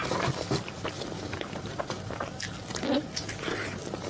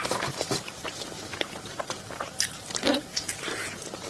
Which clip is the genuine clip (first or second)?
first